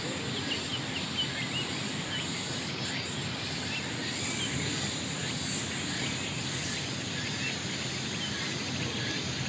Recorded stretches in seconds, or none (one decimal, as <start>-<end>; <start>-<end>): 0.0-9.5